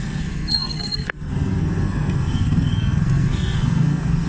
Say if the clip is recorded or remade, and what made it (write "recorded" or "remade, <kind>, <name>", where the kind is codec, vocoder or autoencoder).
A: remade, codec, SNAC